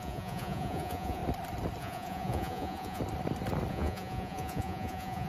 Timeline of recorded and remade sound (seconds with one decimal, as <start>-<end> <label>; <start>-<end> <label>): 0.0-1.2 remade; 1.2-1.8 recorded; 1.8-3.0 remade; 3.0-3.7 recorded; 3.7-5.3 remade